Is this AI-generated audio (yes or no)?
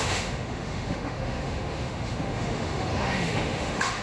yes